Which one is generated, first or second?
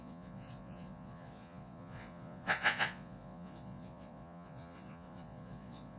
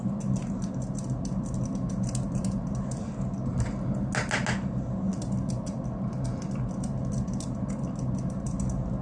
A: first